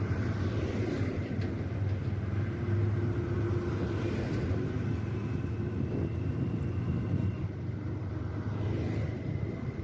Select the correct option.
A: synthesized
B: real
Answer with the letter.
B